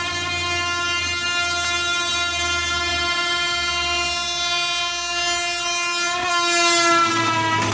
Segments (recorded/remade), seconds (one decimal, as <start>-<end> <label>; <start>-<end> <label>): 0.0-7.7 recorded